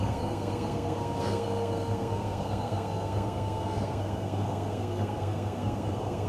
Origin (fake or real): fake